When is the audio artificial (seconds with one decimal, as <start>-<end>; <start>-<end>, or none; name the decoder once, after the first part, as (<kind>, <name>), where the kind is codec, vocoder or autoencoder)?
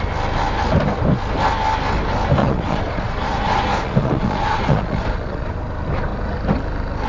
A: 2.4-5.5 (vocoder, Vocos)